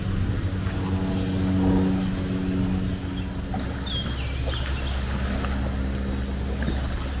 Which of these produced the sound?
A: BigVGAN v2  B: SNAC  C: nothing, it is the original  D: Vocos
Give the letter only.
C